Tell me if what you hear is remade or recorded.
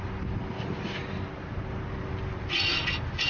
recorded